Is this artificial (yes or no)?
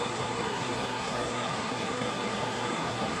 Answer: yes